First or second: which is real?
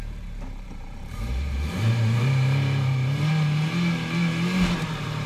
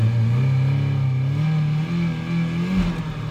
second